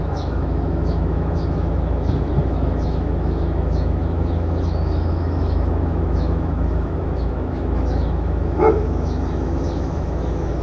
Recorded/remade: remade